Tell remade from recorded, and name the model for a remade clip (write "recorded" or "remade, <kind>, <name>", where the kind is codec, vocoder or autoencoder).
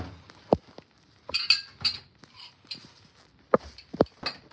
recorded